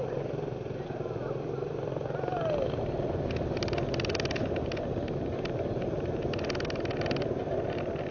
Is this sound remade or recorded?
recorded